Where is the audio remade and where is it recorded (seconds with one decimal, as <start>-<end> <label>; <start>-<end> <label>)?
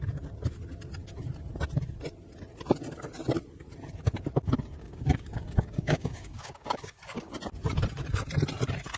0.0-4.8 recorded; 4.8-7.3 remade; 7.3-9.0 recorded